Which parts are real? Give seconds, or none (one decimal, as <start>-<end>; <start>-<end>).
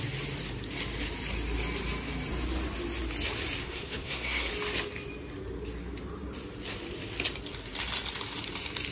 0.0-3.6; 4.5-8.9